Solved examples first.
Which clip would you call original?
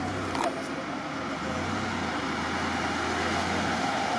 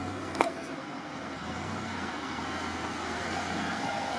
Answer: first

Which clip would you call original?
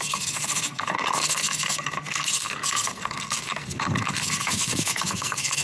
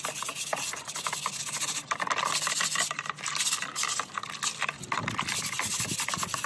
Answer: second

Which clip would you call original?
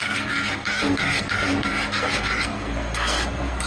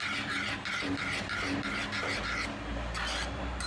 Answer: second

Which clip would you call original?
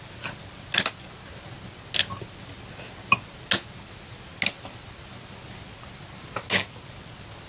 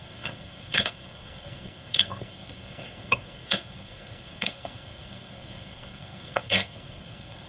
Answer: first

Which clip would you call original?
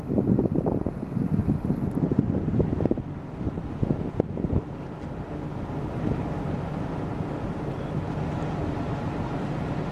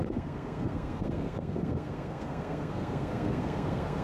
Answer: first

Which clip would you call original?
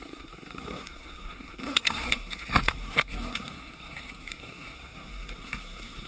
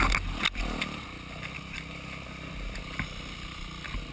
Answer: second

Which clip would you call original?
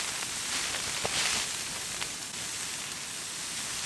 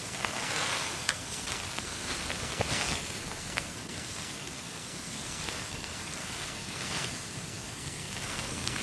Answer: first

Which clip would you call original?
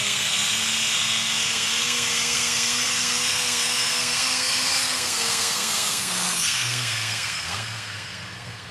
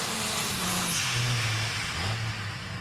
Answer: second